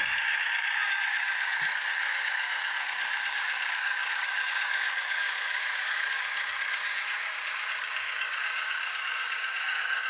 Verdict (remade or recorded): remade